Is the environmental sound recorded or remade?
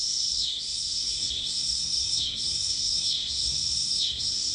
remade